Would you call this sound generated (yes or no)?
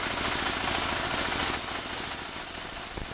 no